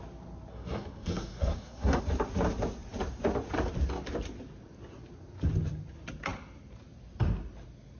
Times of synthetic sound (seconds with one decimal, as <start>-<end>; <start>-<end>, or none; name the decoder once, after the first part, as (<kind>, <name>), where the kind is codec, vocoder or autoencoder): 0.5-2.0 (codec, SNAC)